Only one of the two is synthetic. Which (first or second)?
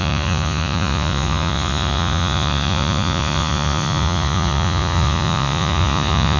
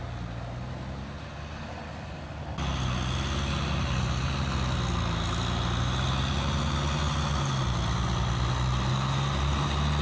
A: first